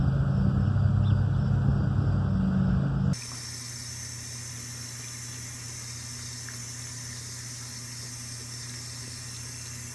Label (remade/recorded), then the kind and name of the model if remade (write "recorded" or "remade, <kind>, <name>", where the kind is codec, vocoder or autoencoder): recorded